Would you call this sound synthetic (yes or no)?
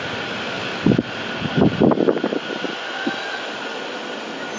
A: no